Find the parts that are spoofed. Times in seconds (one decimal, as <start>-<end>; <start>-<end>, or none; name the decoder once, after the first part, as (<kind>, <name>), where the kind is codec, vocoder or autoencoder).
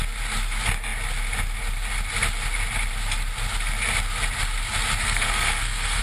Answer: 5.0-6.0 (codec, SNAC)